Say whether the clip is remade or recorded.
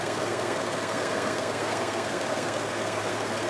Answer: remade